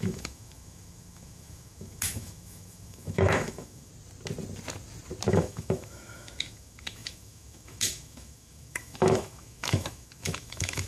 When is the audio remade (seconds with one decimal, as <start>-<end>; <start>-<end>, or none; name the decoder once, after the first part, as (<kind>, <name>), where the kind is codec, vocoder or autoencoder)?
0.0-3.9 (autoencoder, DAC-VAE); 5.3-10.9